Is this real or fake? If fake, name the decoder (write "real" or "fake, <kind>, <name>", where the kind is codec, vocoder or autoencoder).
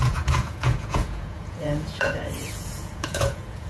fake, vocoder, Vocos